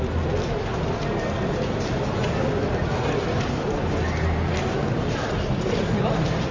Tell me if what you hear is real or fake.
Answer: real